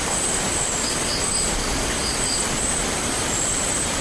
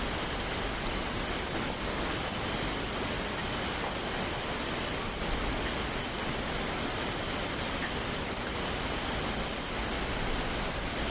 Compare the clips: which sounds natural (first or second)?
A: second